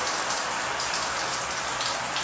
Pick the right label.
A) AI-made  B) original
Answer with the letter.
B